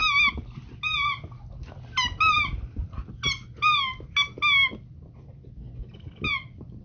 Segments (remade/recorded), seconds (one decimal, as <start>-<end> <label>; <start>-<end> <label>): 0.0-6.8 recorded